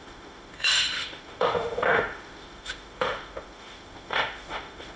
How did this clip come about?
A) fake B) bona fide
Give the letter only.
A